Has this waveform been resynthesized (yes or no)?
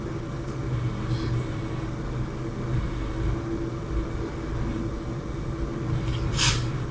no